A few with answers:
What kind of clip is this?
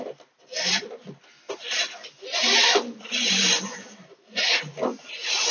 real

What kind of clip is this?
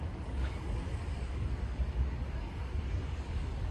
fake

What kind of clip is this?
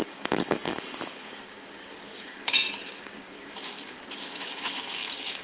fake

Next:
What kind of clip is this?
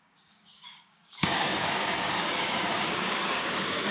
fake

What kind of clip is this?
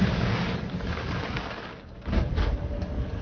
fake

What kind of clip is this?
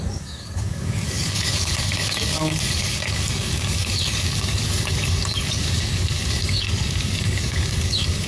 fake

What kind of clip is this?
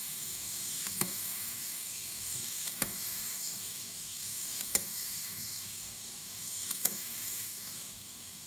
fake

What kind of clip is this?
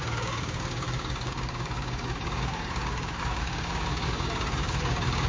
fake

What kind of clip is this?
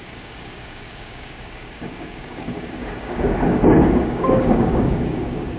fake